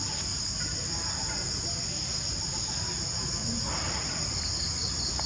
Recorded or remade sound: recorded